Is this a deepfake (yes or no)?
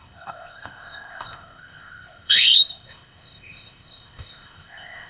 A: yes